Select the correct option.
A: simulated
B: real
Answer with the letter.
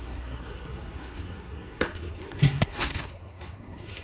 A